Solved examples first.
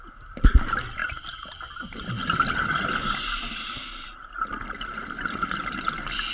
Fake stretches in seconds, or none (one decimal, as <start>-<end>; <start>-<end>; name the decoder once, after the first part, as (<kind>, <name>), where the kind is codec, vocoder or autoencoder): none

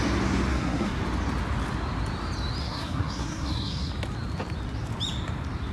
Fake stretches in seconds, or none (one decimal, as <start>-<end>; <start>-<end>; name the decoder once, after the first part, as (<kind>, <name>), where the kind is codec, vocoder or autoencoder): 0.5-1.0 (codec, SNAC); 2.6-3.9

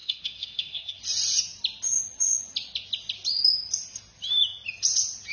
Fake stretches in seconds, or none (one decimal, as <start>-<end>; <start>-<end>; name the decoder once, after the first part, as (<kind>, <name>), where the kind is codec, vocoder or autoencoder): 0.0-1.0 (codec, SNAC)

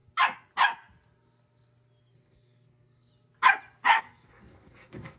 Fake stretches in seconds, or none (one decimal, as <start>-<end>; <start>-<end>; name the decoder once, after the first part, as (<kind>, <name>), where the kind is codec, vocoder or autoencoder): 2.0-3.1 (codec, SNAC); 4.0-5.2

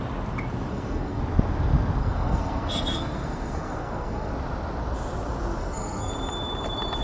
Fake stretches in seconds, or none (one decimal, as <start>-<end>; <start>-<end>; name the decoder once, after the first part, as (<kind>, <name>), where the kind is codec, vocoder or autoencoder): 0.7-1.2 (codec, SNAC); 2.0-4.3; 5.6-6.1